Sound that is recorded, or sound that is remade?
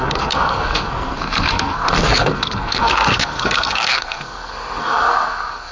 remade